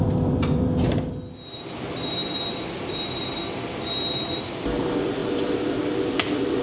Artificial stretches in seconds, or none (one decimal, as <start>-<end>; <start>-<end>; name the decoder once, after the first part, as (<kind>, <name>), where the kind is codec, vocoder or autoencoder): 0.0-6.6 (vocoder, BigVGAN v2)